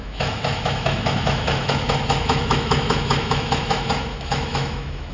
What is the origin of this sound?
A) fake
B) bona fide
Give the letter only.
A